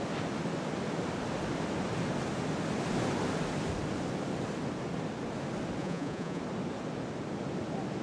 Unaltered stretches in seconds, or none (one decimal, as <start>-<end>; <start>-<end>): 0.0-5.8; 6.4-8.0